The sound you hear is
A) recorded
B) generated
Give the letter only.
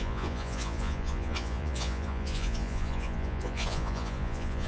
B